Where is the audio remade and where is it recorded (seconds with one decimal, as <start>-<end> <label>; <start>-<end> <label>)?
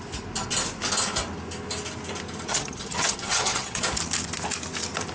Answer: 0.0-2.5 recorded; 2.5-3.8 remade; 3.8-5.1 recorded